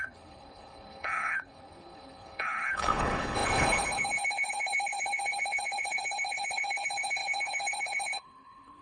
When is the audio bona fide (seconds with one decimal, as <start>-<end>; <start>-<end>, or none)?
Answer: none